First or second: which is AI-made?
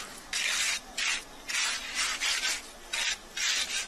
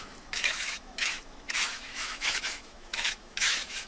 second